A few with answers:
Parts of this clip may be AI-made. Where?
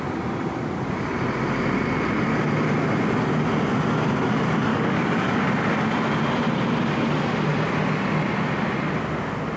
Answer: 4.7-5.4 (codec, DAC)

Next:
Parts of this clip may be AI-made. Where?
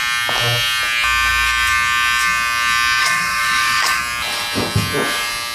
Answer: 3.0-4.0 (codec, DAC)